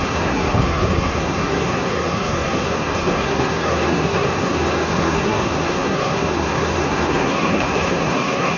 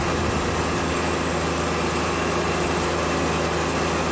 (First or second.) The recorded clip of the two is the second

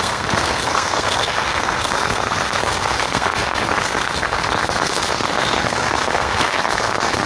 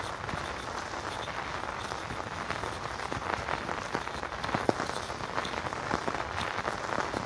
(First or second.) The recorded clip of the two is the second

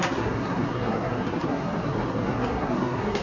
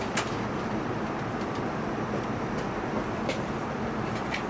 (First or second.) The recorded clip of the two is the second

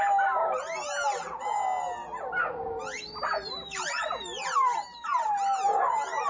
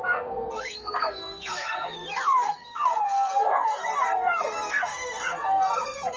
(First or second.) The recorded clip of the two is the first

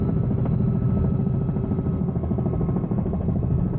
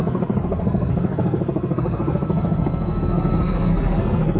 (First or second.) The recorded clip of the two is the first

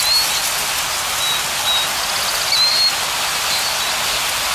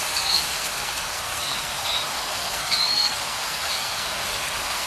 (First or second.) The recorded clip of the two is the first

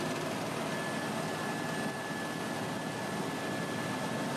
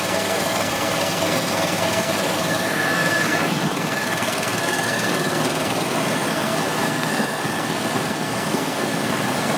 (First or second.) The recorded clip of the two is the first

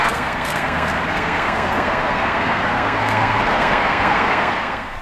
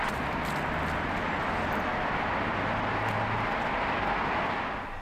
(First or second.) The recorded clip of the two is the second